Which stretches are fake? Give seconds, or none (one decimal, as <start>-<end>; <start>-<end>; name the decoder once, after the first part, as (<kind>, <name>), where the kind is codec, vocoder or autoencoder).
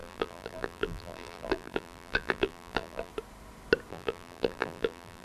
0.0-3.1 (vocoder, BigVGAN v2); 3.9-5.2